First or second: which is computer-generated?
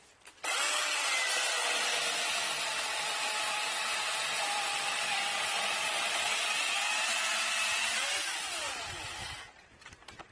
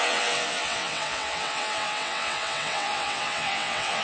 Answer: second